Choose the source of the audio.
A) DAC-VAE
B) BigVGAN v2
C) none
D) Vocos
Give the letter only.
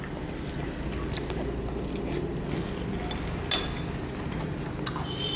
C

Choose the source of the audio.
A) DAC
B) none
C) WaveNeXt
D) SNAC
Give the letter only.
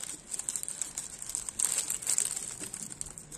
B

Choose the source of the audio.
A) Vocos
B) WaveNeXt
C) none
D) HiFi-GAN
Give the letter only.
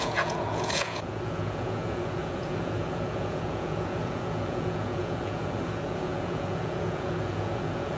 A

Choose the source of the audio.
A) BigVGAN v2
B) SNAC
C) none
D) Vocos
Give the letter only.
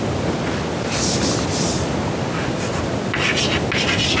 C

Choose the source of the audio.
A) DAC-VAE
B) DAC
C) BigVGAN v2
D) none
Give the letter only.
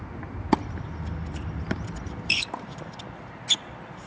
D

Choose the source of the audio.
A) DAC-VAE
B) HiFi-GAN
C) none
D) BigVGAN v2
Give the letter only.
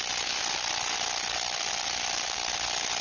C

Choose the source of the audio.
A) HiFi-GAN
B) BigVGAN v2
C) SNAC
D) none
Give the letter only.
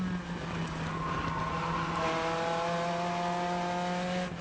D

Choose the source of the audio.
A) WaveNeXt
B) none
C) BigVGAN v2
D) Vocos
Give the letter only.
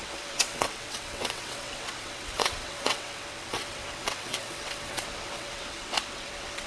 A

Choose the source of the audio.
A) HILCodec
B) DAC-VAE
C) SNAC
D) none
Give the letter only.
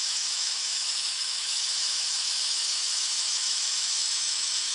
B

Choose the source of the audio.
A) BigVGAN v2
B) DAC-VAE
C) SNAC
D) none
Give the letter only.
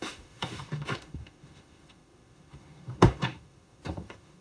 B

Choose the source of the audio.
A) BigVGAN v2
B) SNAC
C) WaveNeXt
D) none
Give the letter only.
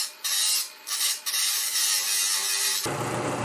D